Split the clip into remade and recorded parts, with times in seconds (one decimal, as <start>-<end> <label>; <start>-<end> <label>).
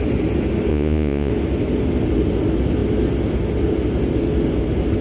0.0-0.7 recorded; 0.7-1.3 remade; 1.3-5.0 recorded